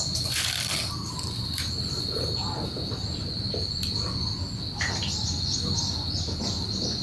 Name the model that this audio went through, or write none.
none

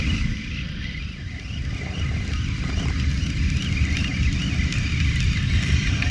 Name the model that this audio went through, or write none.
none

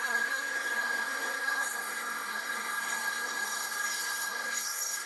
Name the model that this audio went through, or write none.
codec, SNAC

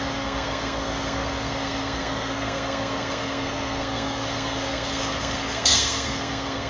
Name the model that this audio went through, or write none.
codec, SNAC